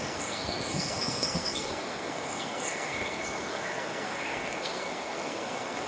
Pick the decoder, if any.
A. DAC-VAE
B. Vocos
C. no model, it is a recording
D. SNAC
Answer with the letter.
D